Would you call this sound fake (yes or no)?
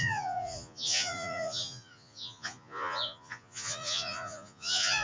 yes